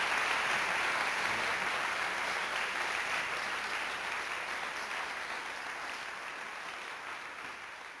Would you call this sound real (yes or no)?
yes